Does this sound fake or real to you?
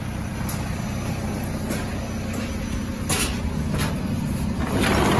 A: real